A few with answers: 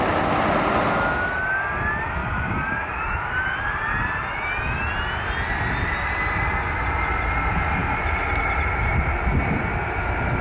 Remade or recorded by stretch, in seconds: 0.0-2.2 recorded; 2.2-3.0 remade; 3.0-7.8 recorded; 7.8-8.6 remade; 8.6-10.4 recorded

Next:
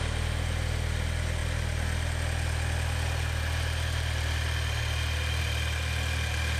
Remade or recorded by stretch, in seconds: 0.0-6.6 recorded

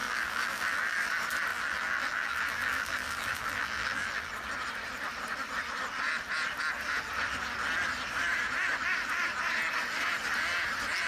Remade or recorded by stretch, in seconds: 0.0-1.1 remade; 1.1-1.5 recorded; 1.5-4.3 remade; 4.3-11.1 recorded

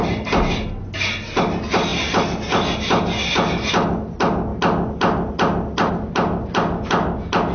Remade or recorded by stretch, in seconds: 0.0-7.5 recorded

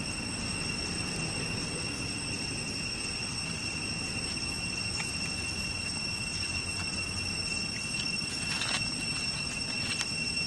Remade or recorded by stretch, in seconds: 0.0-10.5 recorded